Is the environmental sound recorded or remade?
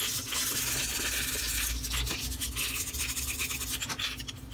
recorded